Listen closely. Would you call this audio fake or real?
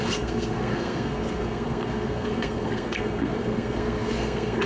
fake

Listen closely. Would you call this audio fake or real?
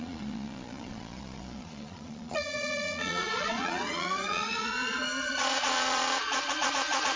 fake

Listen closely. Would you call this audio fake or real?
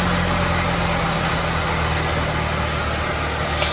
real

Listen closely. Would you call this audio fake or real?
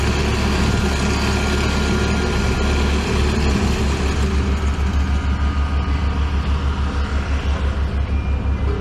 real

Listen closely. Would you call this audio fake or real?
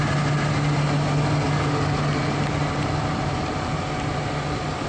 real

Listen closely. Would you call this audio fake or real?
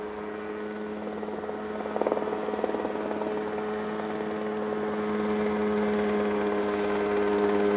real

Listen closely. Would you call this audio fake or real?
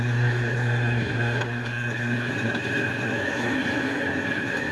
fake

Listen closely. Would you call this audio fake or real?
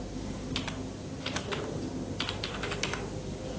real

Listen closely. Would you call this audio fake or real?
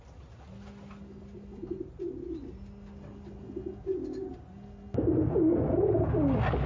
real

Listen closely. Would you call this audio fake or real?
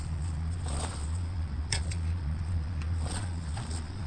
fake